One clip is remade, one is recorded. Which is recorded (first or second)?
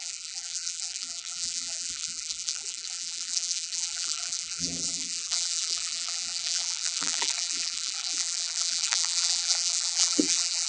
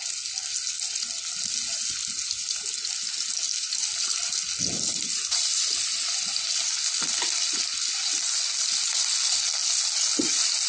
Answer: second